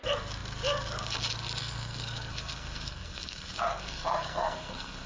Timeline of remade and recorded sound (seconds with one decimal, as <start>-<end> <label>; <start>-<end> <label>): 0.0-1.6 recorded; 1.6-5.1 remade